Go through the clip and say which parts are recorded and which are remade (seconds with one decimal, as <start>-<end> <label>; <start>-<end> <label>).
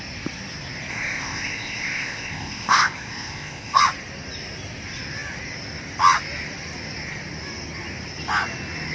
0.0-0.9 recorded; 0.9-3.8 remade; 3.8-8.9 recorded